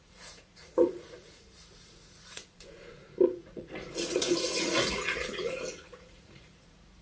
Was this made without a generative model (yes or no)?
no